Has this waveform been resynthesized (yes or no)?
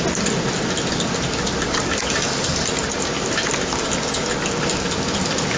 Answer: no